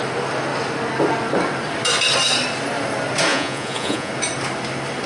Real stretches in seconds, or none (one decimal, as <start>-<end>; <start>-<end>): 0.0-3.3; 4.1-5.1

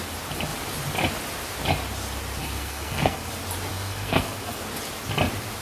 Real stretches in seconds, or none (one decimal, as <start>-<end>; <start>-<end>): 0.0-2.4; 3.3-3.7; 4.6-5.6

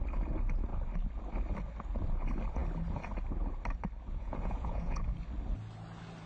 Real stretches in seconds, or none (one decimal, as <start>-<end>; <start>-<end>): 0.0-4.2; 5.0-6.3

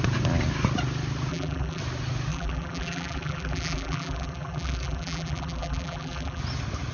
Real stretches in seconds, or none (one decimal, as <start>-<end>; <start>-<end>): 0.0-1.3; 1.8-2.3; 6.4-6.9

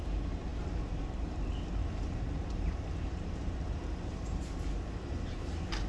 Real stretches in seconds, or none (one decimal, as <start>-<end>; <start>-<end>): none

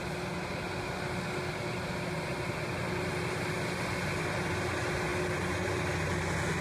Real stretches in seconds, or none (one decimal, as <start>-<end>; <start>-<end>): 0.0-6.6